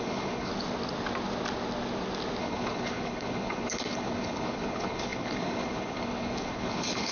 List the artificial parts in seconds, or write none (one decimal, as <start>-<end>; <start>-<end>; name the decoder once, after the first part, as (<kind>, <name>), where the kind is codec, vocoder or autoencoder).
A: 0.0-0.5 (codec, HILCodec); 2.4-7.1